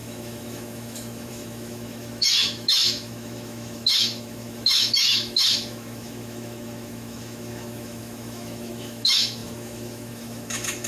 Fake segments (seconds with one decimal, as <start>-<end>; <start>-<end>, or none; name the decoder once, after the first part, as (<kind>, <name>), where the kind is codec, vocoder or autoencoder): 0.0-10.9 (autoencoder, DAC-VAE)